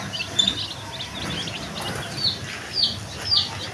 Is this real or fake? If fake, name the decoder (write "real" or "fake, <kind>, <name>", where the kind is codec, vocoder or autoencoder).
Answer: real